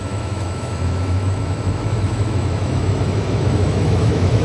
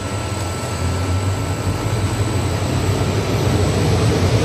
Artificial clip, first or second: first